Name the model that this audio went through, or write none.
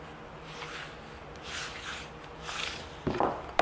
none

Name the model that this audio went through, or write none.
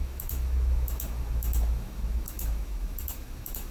autoencoder, DAC-VAE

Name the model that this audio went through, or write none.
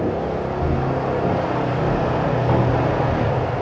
none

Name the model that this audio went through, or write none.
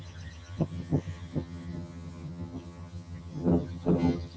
vocoder, HiFi-GAN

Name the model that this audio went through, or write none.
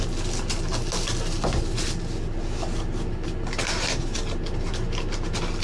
none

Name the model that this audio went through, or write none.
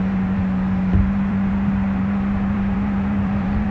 vocoder, BigVGAN v2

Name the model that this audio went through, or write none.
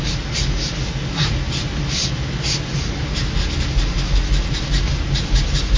none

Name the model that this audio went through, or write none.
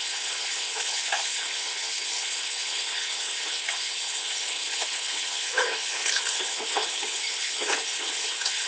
codec, HILCodec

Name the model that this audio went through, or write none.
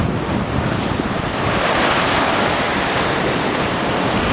none